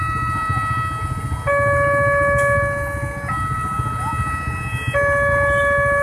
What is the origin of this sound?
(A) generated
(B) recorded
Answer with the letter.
B